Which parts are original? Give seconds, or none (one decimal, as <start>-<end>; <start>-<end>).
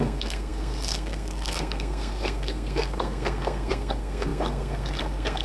none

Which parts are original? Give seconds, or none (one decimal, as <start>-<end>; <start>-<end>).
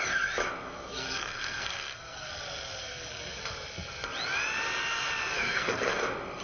0.0-0.9; 2.3-2.8; 3.4-5.3; 5.9-6.4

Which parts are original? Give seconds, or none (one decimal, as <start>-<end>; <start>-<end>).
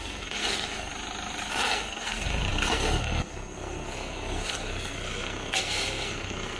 0.9-1.5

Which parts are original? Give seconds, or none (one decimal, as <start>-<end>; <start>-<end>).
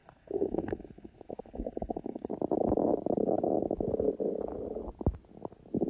2.3-5.9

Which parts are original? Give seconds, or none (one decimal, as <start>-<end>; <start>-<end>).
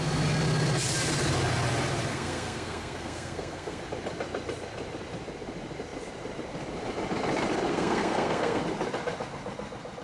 0.0-2.1; 3.8-7.7; 8.6-10.0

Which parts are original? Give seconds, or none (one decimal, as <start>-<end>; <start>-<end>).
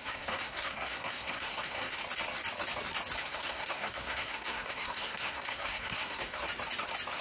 2.0-3.2; 6.4-7.2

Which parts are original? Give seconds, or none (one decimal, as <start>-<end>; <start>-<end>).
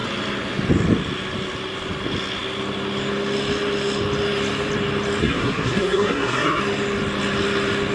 0.0-5.2; 6.6-7.9